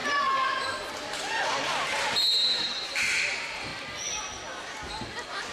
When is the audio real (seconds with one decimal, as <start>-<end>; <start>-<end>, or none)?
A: 0.0-5.5